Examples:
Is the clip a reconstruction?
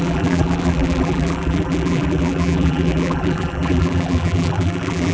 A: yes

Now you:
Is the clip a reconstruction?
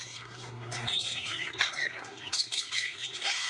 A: yes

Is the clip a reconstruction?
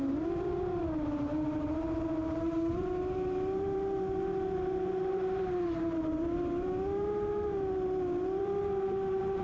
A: yes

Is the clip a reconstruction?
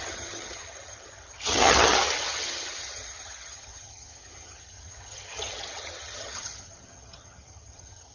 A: yes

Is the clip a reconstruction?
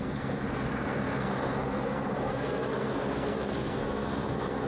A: yes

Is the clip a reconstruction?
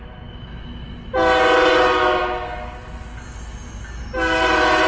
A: no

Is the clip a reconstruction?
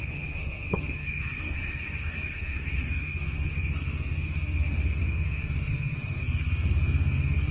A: yes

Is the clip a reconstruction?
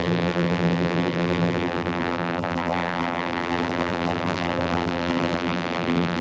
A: yes